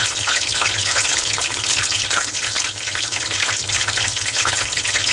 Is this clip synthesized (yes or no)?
yes